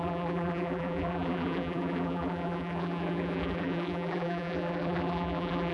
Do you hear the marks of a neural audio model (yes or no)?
yes